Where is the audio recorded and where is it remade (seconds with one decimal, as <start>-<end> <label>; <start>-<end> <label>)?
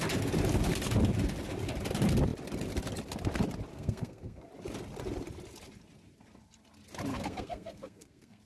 0.0-3.7 recorded; 3.7-4.5 remade; 4.5-7.1 recorded; 7.1-8.4 remade